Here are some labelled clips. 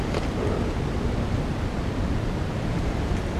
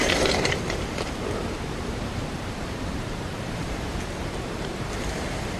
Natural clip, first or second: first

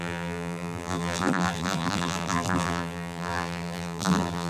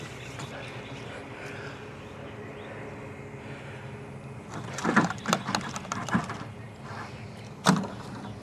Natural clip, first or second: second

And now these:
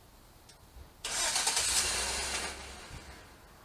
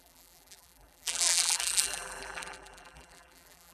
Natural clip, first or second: first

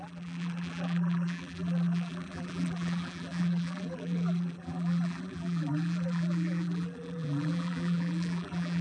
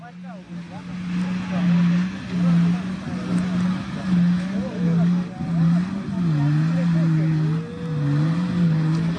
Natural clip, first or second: second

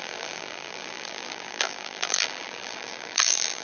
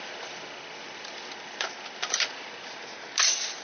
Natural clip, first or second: second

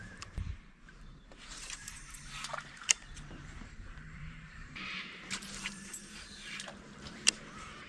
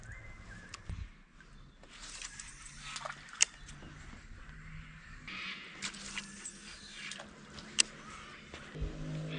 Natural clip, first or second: second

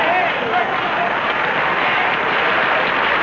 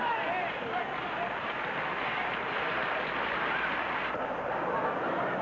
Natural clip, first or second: first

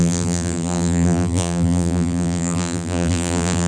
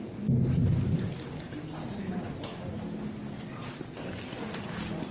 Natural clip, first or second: second